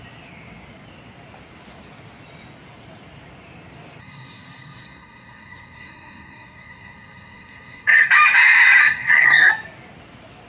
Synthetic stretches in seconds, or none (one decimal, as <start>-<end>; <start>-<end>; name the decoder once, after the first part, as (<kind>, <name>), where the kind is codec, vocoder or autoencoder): 4.0-8.1 (codec, SNAC); 8.8-9.5